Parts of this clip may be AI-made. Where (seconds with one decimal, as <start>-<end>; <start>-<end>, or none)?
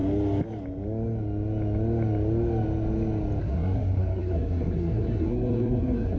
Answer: 3.4-6.2